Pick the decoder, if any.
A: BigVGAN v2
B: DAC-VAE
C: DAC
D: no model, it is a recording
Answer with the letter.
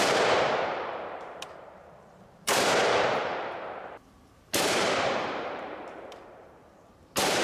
A